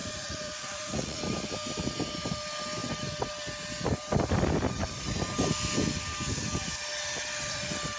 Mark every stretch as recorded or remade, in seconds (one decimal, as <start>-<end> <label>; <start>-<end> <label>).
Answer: 0.0-1.2 remade; 1.2-8.0 recorded